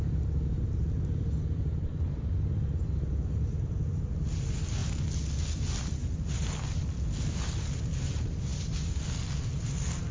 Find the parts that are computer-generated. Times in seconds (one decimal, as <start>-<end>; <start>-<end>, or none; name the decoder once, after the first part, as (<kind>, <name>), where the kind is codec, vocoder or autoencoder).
none